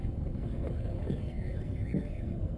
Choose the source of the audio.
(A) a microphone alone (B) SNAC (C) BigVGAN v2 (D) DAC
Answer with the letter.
B